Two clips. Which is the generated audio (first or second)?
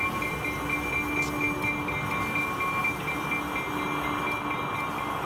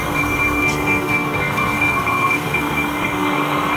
second